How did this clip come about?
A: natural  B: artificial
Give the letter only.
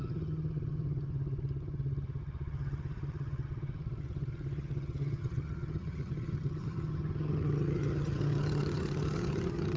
B